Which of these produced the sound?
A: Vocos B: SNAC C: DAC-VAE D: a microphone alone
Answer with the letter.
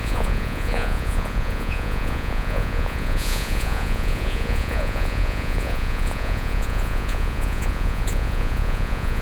A